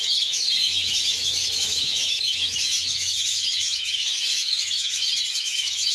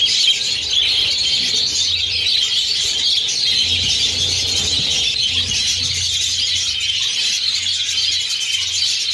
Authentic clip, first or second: second